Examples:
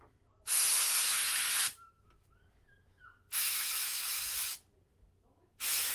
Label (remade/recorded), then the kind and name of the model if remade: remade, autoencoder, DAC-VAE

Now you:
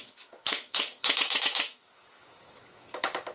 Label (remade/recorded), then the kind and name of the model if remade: remade, autoencoder, DAC-VAE